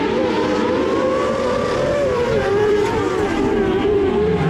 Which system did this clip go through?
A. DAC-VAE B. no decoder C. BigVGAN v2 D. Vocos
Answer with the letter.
C